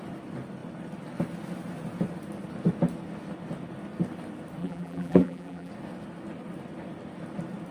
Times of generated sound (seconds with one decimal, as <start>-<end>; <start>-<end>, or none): 4.6-5.7